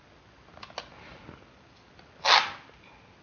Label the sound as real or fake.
real